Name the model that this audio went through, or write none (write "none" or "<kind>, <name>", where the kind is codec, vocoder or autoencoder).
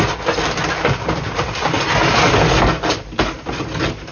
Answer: none